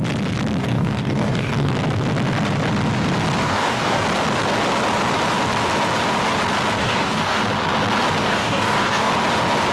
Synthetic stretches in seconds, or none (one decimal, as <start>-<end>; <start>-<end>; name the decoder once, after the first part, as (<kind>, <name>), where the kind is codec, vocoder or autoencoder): 0.6-1.7 (codec, DAC); 3.4-4.0; 6.8-7.4; 8.2-9.1